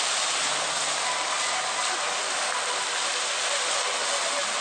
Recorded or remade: recorded